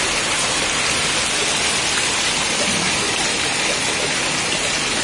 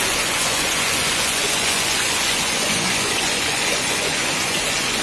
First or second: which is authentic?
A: first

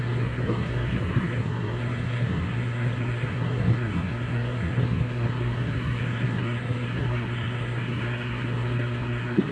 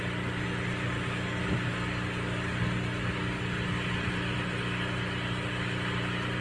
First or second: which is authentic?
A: second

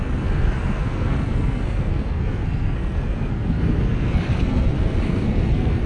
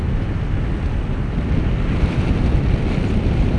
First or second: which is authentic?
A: second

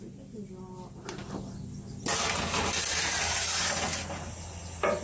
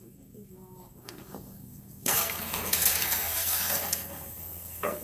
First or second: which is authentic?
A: first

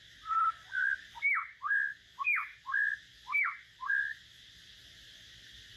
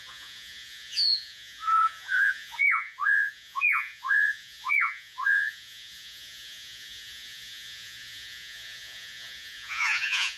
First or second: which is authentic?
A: first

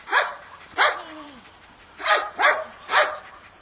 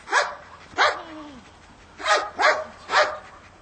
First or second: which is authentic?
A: second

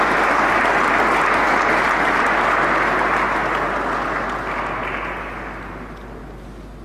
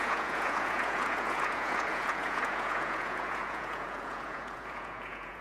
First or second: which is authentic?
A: first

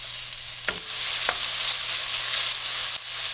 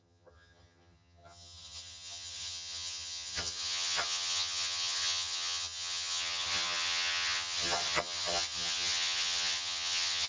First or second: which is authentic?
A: first